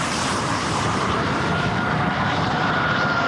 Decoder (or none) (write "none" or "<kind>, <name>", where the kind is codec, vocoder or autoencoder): vocoder, BigVGAN v2